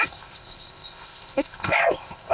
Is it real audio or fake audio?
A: fake